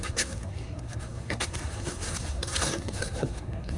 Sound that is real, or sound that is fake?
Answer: fake